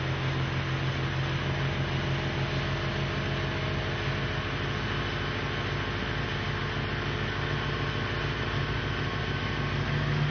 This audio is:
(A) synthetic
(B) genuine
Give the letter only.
B